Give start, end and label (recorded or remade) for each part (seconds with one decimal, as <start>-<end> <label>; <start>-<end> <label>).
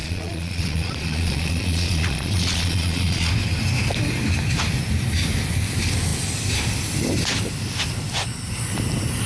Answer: 0.0-3.3 remade; 3.3-9.3 recorded